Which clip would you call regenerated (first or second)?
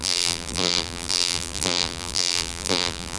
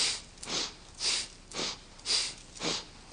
first